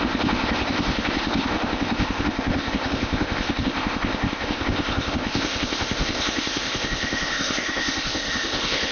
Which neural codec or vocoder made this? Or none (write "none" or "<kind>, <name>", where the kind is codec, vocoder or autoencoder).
codec, ZipCodec